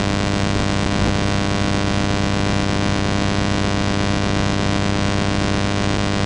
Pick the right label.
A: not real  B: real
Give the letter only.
B